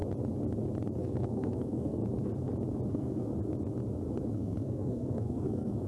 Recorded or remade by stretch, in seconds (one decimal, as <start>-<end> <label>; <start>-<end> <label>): 0.0-0.9 recorded; 0.9-2.0 remade; 2.0-2.9 recorded; 2.9-3.3 remade; 3.3-4.3 recorded; 4.3-5.9 remade